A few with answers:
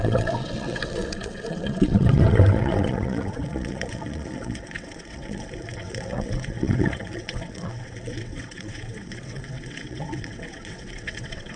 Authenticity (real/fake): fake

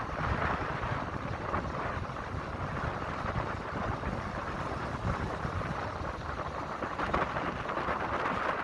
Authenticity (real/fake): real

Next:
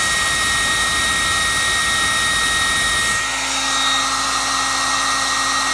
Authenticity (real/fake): real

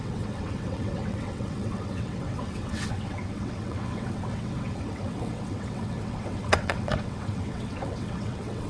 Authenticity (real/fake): fake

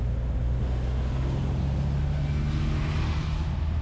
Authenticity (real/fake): real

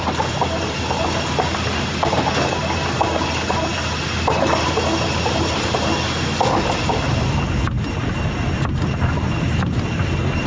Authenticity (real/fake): real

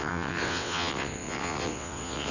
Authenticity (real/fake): fake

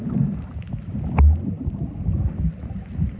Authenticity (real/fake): real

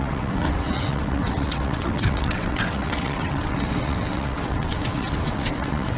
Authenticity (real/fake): fake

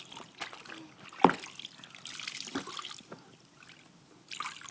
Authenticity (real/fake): real